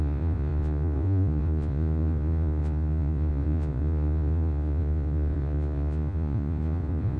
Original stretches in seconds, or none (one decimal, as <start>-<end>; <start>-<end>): none